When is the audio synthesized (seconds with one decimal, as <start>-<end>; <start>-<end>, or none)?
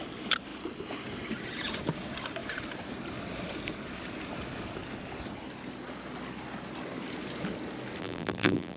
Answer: 8.0-8.8